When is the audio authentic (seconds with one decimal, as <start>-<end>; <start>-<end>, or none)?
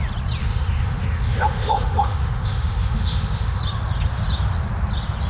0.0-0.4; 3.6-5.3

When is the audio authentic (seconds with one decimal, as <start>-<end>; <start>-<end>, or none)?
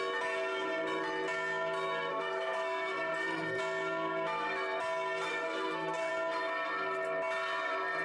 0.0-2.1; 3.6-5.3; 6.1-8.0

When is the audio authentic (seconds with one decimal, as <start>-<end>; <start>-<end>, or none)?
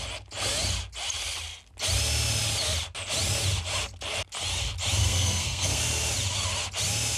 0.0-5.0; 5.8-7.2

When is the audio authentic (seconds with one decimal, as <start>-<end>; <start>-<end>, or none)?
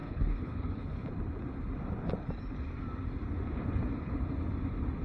1.1-5.0